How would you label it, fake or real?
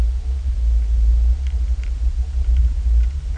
real